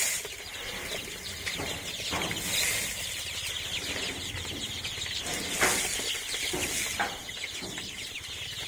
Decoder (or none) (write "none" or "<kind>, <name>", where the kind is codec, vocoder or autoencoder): none